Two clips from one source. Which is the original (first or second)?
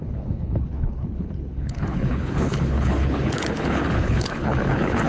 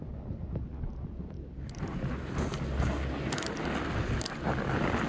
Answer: second